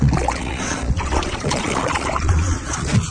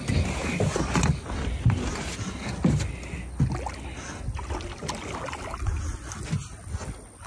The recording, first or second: second